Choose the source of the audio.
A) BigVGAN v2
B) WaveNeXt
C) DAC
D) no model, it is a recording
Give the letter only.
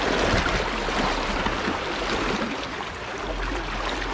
D